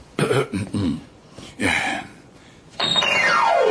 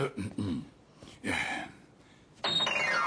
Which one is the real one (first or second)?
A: second